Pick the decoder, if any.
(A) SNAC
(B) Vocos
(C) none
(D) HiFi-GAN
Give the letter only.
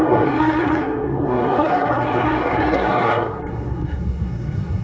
A